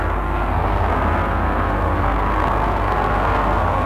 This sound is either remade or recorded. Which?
remade